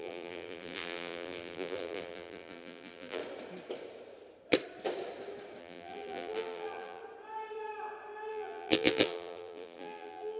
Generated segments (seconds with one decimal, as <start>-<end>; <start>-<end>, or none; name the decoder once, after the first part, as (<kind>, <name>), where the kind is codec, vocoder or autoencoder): 0.0-3.2 (vocoder, BigVGAN v2); 5.6-7.0; 8.3-10.4

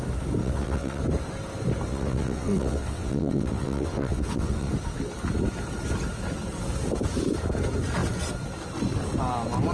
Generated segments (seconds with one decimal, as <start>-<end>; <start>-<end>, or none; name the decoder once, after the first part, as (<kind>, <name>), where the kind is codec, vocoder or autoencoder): 0.4-1.0 (vocoder, WaveNeXt); 1.9-4.7

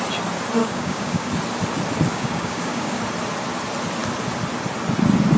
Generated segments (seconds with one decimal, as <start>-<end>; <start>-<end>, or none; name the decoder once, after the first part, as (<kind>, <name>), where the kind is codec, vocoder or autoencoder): 0.6-1.3 (codec, DAC); 2.1-3.0

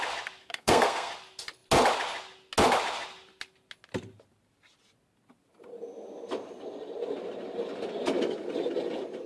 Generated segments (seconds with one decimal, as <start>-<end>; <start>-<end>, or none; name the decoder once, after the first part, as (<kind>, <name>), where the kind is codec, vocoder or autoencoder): 0.4-1.1 (codec, SNAC)

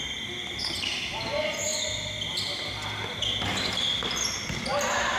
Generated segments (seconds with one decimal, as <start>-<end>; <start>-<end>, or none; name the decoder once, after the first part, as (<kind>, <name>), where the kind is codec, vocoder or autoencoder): none

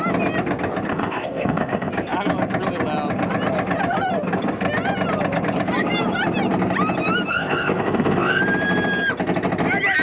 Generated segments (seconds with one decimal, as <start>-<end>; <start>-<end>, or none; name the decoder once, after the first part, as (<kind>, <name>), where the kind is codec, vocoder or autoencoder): 0.9-1.9 (codec, ZipCodec); 7.3-8.4